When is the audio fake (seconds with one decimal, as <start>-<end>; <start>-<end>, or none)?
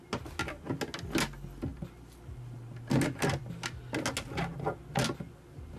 none